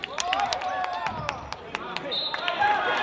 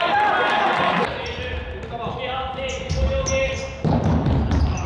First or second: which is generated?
first